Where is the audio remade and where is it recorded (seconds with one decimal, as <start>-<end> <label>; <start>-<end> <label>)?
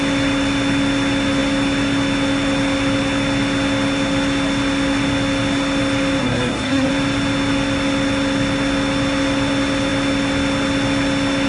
0.0-6.2 recorded; 6.2-6.9 remade; 6.9-11.5 recorded